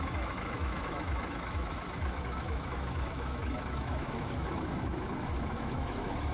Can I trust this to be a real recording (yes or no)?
no